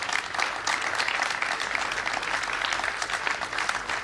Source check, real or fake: real